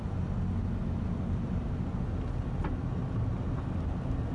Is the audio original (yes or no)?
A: yes